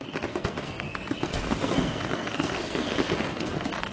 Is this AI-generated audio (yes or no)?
yes